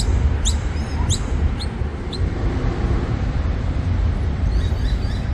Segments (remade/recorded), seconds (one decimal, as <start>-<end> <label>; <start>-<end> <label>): 0.0-1.9 recorded; 1.9-4.7 remade; 4.7-5.3 recorded